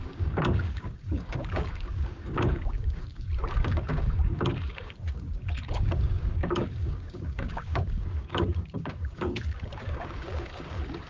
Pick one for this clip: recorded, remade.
remade